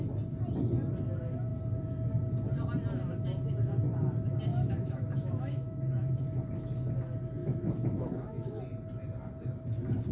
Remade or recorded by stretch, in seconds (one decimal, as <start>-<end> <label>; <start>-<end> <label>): 0.0-4.5 recorded; 4.5-6.2 remade; 6.2-7.4 recorded; 7.4-8.6 remade; 8.6-10.1 recorded